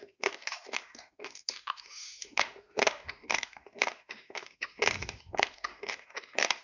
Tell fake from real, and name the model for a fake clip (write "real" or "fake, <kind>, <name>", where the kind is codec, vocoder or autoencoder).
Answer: fake, autoencoder, DAC-VAE